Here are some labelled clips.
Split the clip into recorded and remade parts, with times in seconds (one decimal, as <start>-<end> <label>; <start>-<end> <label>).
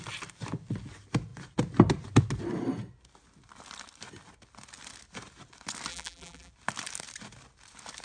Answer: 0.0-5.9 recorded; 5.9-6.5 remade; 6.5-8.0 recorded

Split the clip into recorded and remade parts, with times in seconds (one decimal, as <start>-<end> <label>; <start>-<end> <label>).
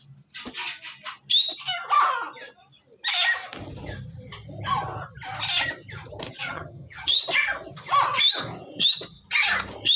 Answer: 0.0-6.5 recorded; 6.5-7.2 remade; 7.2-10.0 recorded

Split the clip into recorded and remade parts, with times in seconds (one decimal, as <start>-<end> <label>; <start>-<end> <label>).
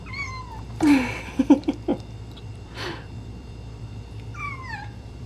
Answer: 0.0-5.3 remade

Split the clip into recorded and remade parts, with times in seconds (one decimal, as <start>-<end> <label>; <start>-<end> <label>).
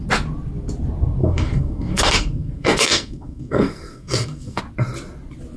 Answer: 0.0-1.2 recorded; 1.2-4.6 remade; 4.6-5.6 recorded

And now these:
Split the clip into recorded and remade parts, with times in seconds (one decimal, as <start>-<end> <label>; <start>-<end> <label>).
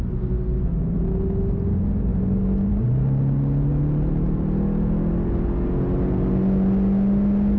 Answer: 0.0-7.6 recorded